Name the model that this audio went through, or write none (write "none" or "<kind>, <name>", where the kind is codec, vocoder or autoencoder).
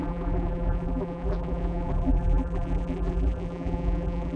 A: vocoder, BigVGAN v2